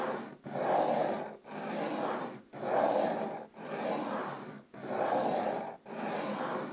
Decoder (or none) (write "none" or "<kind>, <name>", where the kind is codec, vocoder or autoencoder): none